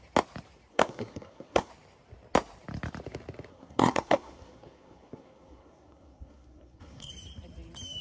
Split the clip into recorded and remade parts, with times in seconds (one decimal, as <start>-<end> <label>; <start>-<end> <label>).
0.0-0.7 recorded; 0.7-1.7 remade; 1.7-3.5 recorded; 3.5-7.1 remade; 7.1-8.0 recorded